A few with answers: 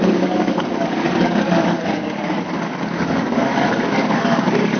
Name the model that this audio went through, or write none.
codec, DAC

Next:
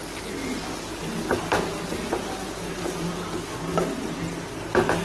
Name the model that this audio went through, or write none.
none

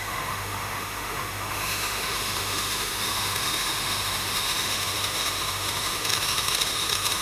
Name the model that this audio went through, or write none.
autoencoder, DAC-VAE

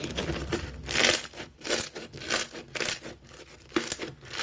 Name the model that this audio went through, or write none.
none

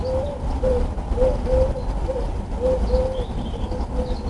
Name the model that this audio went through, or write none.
none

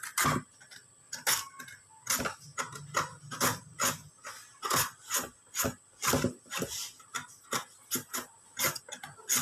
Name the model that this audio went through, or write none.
none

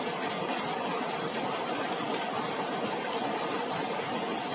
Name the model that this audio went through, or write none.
none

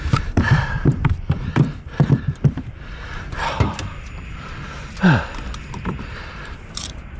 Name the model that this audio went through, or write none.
vocoder, BigVGAN v2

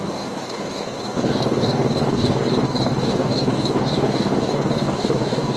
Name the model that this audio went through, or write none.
codec, DAC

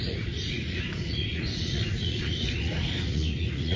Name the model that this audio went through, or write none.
vocoder, Vocos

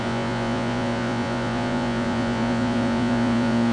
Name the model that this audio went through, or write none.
vocoder, Vocos